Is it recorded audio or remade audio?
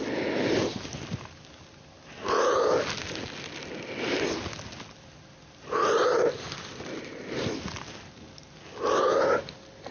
recorded